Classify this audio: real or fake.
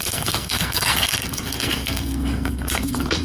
fake